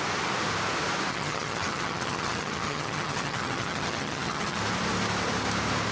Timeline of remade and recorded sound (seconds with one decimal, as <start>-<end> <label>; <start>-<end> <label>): 0.0-1.1 recorded; 1.1-4.6 remade; 4.6-5.9 recorded